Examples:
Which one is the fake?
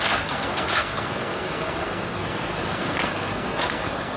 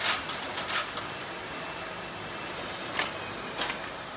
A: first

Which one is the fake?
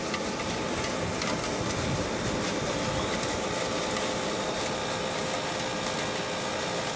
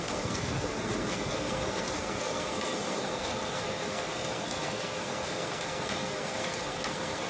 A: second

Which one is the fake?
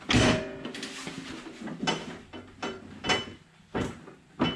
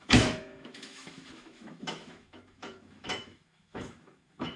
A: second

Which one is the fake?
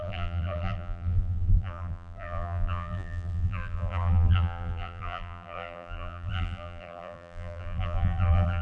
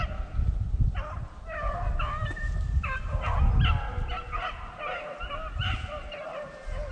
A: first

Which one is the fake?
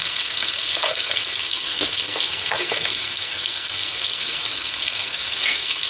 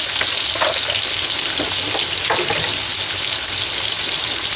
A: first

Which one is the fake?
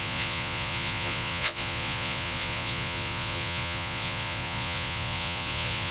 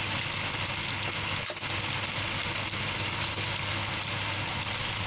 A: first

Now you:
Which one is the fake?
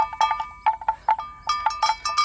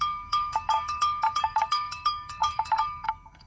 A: second